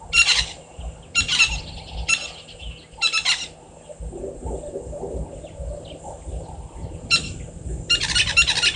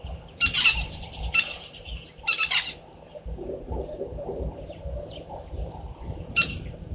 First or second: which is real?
first